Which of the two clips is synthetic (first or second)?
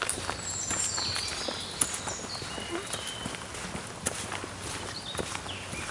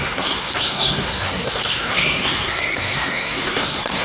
second